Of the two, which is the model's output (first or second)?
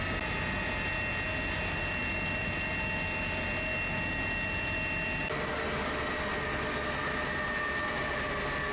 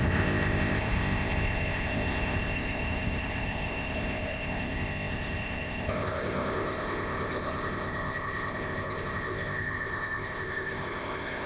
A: second